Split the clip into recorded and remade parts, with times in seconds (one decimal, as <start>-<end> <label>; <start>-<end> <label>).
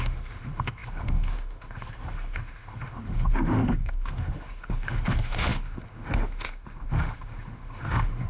0.0-8.3 remade